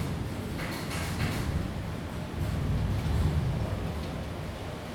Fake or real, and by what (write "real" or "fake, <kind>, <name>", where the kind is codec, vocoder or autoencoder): real